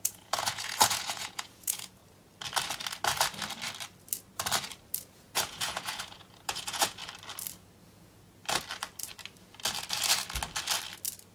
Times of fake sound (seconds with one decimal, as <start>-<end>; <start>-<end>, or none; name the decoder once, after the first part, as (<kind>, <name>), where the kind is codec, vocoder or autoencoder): 0.0-2.0 (vocoder, Vocos); 5.0-7.0; 7.8-8.4